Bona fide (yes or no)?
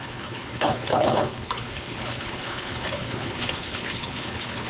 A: no